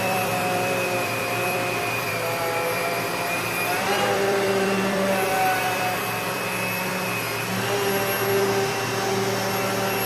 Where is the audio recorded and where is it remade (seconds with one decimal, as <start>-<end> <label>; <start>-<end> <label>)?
0.0-6.9 remade; 6.9-10.1 recorded